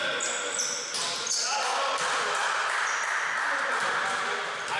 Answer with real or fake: real